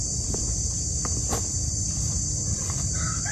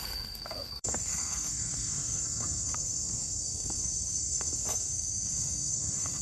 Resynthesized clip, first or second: second